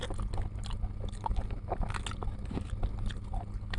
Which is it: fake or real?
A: real